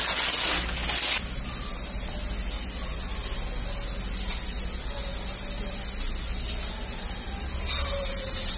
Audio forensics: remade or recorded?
recorded